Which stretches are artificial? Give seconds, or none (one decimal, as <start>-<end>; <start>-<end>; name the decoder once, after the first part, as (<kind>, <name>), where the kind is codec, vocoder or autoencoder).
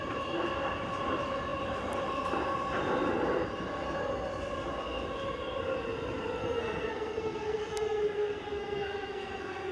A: 6.4-9.7 (codec, SNAC)